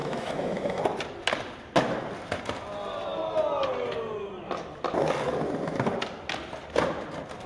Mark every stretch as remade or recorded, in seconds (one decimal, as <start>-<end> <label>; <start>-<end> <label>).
0.0-0.8 remade; 0.8-7.5 recorded